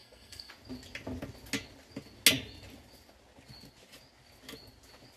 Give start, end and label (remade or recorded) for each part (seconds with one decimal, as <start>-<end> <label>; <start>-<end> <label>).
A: 0.0-0.5 remade; 0.5-5.2 recorded